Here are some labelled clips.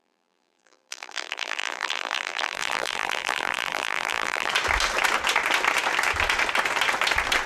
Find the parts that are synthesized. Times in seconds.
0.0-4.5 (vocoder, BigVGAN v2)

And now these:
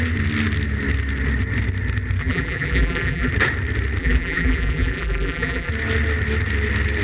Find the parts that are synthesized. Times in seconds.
2.2-3.3 (vocoder, BigVGAN v2); 4.0-5.7

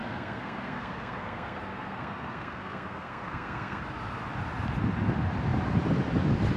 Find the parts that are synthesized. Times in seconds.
0.0-3.8 (codec, SNAC)

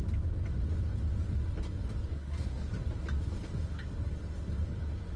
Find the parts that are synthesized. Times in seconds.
2.1-2.7 (codec, SNAC)